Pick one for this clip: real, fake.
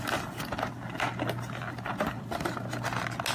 real